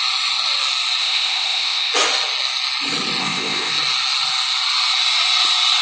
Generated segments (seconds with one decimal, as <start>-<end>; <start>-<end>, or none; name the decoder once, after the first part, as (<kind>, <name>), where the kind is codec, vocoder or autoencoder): 1.0-1.9 (codec, ZipCodec); 3.2-3.7